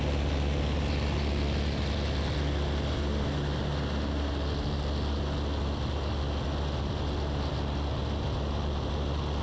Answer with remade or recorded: recorded